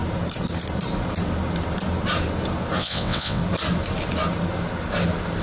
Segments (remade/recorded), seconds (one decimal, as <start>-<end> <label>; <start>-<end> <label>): 0.0-2.8 recorded; 2.8-3.4 remade; 3.4-5.4 recorded